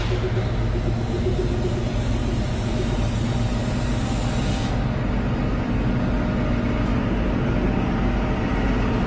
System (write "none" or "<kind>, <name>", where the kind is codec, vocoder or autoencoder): none